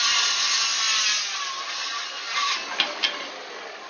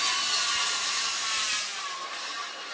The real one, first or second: first